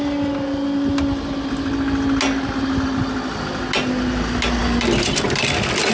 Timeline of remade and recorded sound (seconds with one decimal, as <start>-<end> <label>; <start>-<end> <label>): 0.0-5.9 recorded